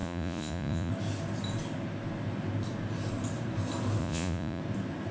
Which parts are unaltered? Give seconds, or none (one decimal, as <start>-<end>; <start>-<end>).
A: 0.9-4.0; 4.6-5.1